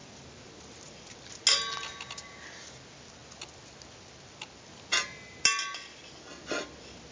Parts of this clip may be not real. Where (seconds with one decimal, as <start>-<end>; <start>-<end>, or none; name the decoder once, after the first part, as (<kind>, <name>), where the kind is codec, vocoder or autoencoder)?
none